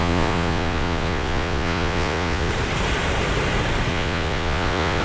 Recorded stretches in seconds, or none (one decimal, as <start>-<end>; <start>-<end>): 2.5-3.9